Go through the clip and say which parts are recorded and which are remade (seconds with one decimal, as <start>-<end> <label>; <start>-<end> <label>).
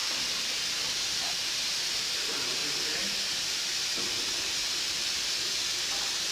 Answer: 0.0-6.3 recorded